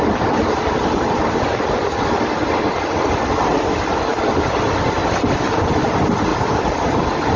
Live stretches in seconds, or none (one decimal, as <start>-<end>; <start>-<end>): 0.0-7.4